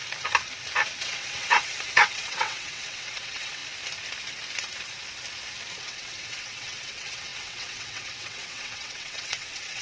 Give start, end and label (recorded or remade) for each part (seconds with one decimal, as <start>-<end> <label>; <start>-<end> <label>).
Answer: 0.0-1.0 recorded; 1.0-3.6 remade; 3.6-5.8 recorded; 5.8-9.8 remade